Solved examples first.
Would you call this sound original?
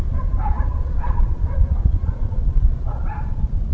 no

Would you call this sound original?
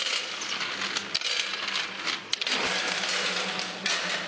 yes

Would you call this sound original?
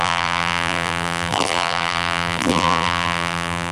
no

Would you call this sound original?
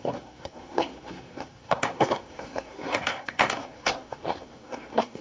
no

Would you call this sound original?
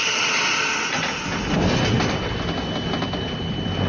yes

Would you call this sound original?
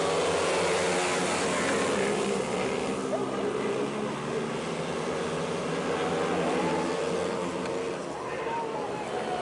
yes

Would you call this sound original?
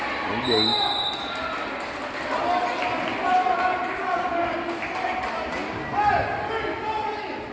yes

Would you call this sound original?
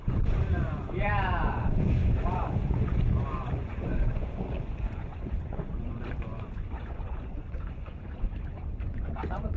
no